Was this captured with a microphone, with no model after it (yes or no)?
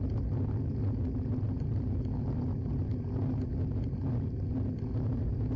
yes